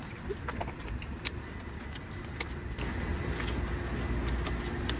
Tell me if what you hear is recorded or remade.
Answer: recorded